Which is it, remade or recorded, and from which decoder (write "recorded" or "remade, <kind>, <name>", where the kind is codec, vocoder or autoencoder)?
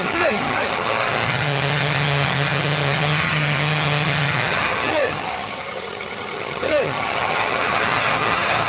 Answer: remade, vocoder, HiFi-GAN